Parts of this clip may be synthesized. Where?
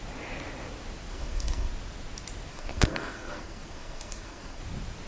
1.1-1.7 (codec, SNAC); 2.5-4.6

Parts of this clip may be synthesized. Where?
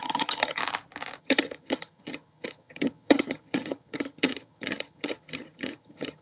0.0-0.6 (vocoder, HiFi-GAN); 1.2-6.2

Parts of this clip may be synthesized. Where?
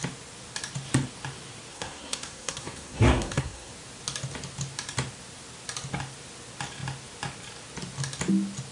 1.7-3.7 (codec, SNAC)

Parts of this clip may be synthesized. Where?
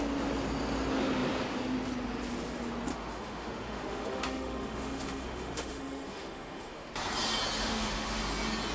2.9-6.9 (autoencoder, DAC-VAE); 7.6-8.2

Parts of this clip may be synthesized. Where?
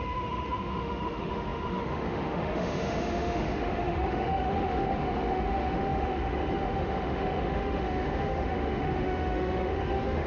0.0-10.3 (autoencoder, DAC-VAE)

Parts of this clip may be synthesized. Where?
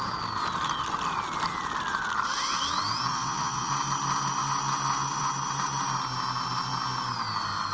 3.1-3.7 (vocoder, Vocos)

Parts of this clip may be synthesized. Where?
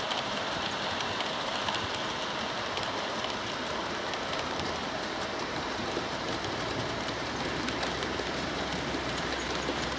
0.0-1.5 (vocoder, BigVGAN v2); 4.2-10.0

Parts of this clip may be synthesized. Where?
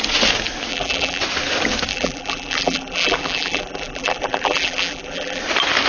0.7-1.2 (vocoder, BigVGAN v2); 1.9-5.4